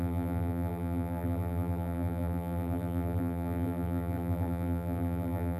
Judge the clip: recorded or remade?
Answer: remade